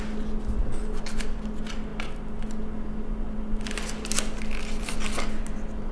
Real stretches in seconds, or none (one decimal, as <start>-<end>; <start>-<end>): 0.0-5.9